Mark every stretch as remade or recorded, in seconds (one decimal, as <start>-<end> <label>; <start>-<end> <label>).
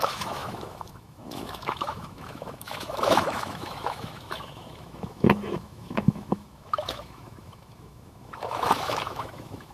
0.0-9.7 remade